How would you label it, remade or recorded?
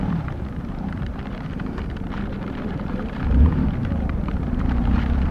remade